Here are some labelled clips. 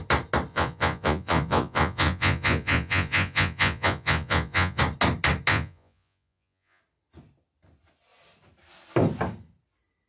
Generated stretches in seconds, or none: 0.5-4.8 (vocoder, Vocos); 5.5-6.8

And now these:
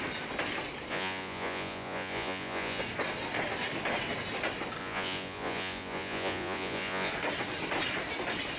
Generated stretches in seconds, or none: 0.9-2.8 (vocoder, Vocos); 4.8-7.1

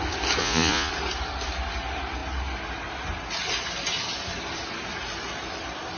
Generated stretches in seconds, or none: 0.4-0.9 (vocoder, Vocos)

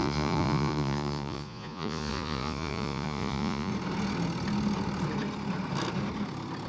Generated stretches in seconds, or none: 0.0-3.7 (vocoder, Vocos)

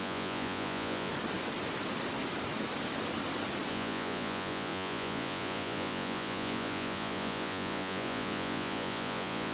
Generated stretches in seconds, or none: 0.0-1.1 (vocoder, Vocos); 3.7-9.5

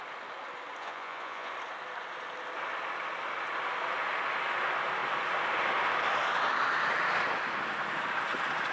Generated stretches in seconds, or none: 0.8-1.5 (vocoder, Vocos)

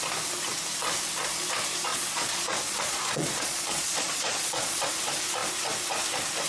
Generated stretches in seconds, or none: 1.9-4.9 (vocoder, Vocos)

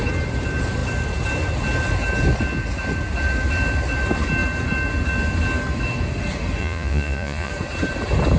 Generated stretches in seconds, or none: 6.6-7.5 (vocoder, Vocos)